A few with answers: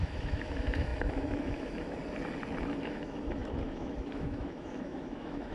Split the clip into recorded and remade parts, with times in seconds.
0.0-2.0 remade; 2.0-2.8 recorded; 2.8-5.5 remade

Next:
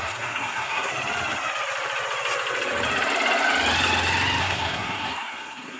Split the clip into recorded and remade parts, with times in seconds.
0.0-0.9 remade; 0.9-4.4 recorded; 4.4-5.8 remade

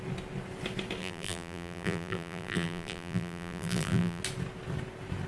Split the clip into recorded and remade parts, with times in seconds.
0.0-1.0 recorded; 1.0-4.2 remade; 4.2-5.3 recorded

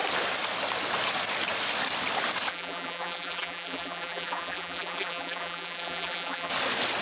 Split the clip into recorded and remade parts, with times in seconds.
0.0-2.5 recorded; 2.5-6.5 remade; 6.5-7.0 recorded

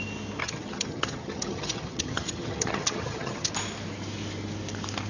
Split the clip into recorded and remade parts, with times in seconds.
0.0-0.4 recorded; 0.4-3.5 remade; 3.5-5.1 recorded

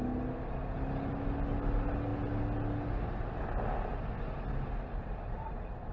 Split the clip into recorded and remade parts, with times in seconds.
0.0-5.9 recorded

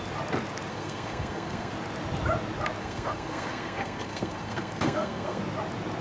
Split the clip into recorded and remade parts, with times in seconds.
0.0-0.7 recorded; 0.7-1.7 remade; 1.7-2.8 recorded; 2.8-5.4 remade; 5.4-6.0 recorded